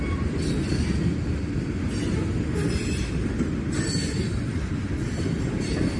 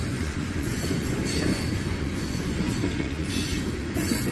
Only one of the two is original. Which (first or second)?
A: first